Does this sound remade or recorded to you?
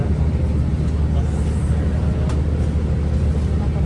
recorded